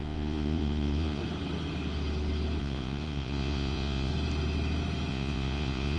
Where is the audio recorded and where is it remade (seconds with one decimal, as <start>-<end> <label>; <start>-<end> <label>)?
0.0-1.2 remade; 1.2-2.6 recorded; 2.6-4.1 remade; 4.1-5.1 recorded; 5.1-6.0 remade